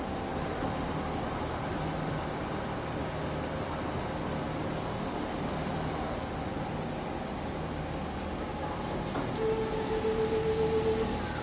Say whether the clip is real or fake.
real